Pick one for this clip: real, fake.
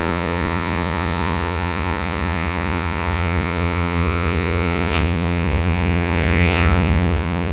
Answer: fake